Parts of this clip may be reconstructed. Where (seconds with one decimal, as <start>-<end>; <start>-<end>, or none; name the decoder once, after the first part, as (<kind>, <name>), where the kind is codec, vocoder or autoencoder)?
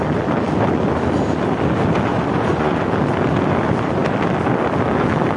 2.1-2.8 (vocoder, Vocos)